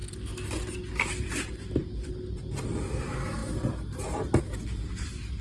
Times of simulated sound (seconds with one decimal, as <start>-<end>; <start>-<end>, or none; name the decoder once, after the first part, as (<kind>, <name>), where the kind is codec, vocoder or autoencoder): none